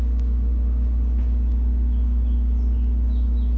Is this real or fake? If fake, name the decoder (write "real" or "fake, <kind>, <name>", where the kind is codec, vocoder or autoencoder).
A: real